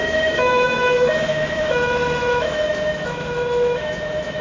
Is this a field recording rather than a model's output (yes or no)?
no